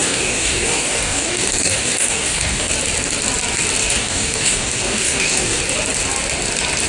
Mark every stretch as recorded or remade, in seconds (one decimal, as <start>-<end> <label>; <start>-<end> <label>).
0.0-2.7 remade; 2.7-3.8 recorded; 3.8-5.6 remade; 5.6-6.9 recorded